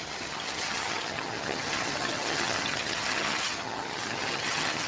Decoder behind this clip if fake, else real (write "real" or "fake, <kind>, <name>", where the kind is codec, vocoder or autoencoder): fake, vocoder, HiFi-GAN